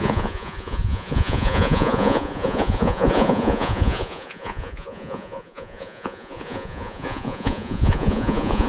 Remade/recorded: remade